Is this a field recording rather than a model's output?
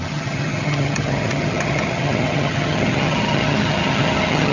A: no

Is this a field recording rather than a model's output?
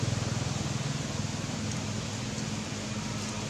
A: yes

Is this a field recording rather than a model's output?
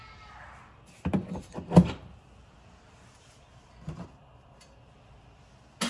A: yes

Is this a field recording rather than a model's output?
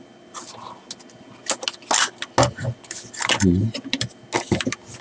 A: yes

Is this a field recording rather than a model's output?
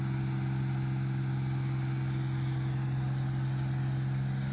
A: yes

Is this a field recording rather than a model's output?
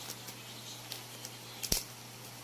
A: yes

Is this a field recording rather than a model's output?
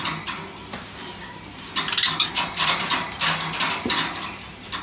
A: yes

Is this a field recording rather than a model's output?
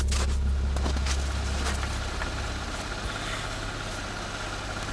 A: yes